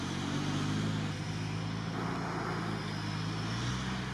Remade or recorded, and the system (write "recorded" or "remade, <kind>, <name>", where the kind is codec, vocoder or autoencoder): recorded